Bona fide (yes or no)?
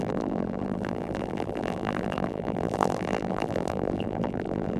no